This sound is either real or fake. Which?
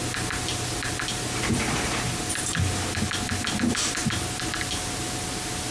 real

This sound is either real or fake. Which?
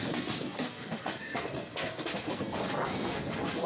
fake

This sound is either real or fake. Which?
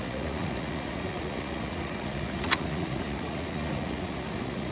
fake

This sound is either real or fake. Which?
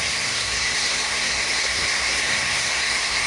fake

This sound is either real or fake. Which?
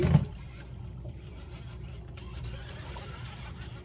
real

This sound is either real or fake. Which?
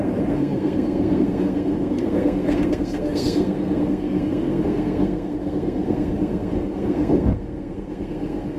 fake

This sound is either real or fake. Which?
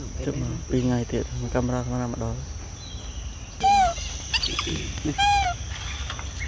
real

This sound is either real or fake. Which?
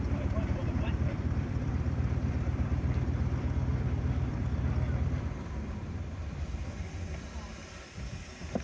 fake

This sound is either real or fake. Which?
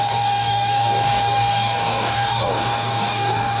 fake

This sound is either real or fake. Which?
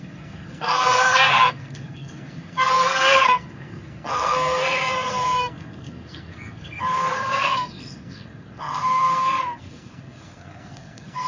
fake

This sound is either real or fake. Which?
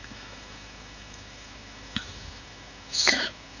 fake